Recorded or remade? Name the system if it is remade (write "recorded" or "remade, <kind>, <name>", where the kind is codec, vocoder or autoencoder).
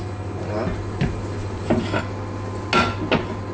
recorded